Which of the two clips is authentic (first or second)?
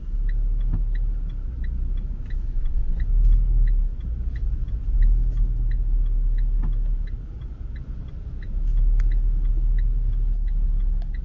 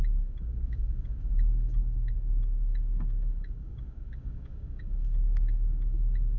first